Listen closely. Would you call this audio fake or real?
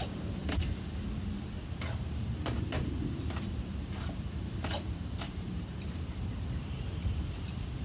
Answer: fake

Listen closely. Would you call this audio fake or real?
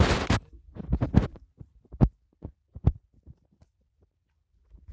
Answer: fake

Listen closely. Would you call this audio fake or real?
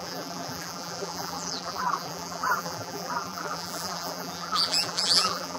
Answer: fake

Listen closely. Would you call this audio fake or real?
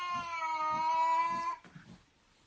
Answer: real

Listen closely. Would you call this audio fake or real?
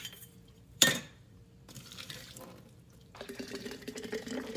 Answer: fake